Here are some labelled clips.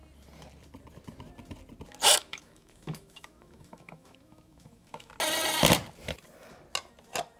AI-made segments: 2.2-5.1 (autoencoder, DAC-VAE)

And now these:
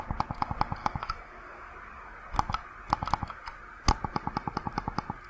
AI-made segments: 0.8-1.7 (autoencoder, DAC-VAE)

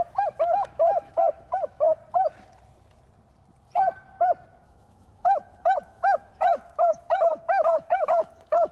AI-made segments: 0.0-2.0 (autoencoder, DAC-VAE); 4.5-8.7